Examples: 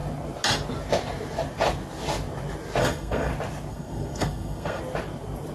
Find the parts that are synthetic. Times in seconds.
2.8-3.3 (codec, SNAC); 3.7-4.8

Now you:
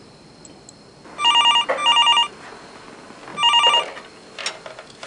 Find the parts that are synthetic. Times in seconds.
none

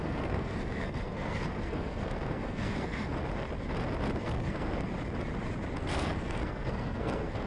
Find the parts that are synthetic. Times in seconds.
0.0-3.2 (codec, SNAC); 4.2-4.9; 5.8-7.5

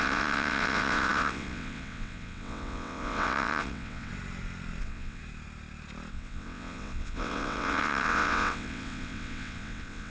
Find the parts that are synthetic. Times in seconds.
0.0-4.1 (vocoder, WaveNeXt); 4.8-5.2; 6.1-10.1

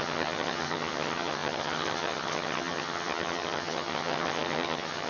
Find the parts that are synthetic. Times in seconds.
0.0-5.1 (vocoder, HiFi-GAN)

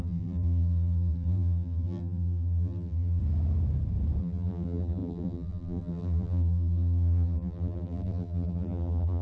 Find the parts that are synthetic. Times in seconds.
0.0-3.2 (vocoder, BigVGAN v2); 4.2-9.2

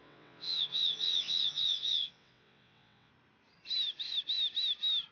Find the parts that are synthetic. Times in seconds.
0.0-3.1 (vocoder, WaveNeXt)